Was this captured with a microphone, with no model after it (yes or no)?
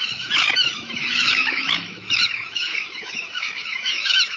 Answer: no